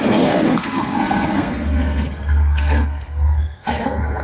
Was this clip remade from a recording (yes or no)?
yes